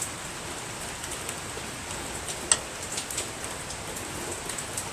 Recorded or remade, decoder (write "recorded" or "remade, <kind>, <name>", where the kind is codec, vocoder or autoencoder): recorded